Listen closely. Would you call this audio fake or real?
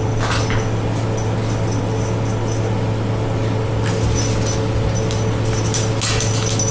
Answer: real